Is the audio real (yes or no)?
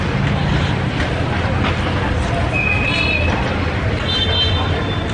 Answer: yes